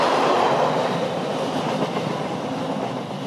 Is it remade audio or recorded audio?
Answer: recorded